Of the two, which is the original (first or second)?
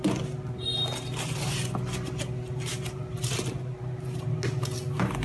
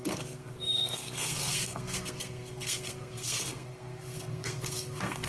first